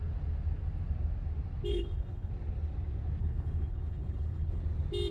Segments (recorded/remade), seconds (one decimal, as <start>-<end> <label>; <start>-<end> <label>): 0.0-1.7 recorded; 1.7-2.3 remade; 2.3-3.2 recorded; 3.2-4.6 remade; 4.6-5.1 recorded